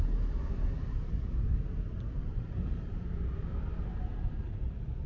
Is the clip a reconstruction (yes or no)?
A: no